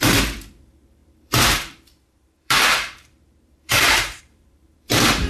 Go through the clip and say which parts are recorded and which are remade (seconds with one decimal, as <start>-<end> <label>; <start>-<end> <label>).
0.0-5.3 remade